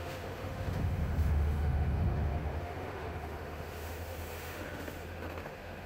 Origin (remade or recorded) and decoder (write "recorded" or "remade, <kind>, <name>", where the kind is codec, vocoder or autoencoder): remade, autoencoder, DAC-VAE